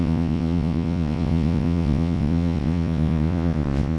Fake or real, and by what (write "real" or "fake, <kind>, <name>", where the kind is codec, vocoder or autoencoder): fake, vocoder, Vocos